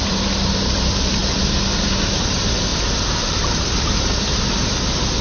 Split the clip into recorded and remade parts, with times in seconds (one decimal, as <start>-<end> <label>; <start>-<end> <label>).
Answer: 0.0-2.7 recorded; 2.7-4.4 remade; 4.4-5.2 recorded